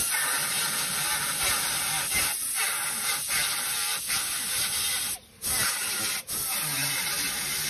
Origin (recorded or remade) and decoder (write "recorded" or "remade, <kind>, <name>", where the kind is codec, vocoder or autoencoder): recorded